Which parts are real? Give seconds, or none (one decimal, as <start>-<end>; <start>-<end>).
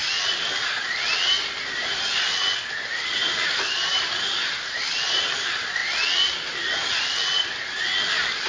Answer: 0.0-3.2; 4.0-8.5